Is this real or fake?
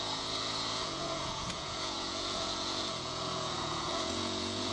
fake